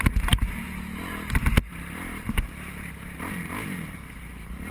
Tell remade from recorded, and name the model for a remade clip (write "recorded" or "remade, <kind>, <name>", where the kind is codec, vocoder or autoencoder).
recorded